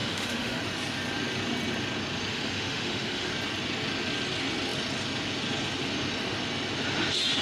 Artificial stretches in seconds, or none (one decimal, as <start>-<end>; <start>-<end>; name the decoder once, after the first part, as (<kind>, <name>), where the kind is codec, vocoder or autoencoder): 0.0-0.6 (autoencoder, DAC-VAE); 2.3-3.3